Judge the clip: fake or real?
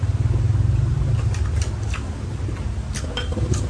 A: real